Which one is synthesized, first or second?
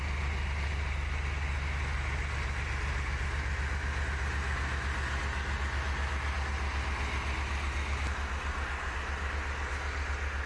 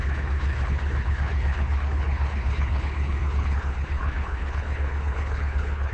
second